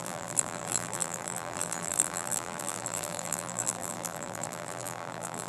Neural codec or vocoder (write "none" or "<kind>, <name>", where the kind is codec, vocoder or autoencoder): vocoder, BigVGAN v2